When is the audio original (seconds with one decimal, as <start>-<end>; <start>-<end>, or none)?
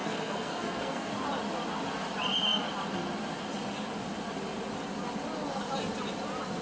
1.1-6.6